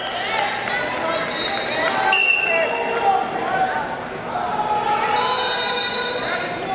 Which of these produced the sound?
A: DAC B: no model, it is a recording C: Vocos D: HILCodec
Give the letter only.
B